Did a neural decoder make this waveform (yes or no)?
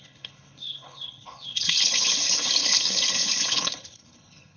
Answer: yes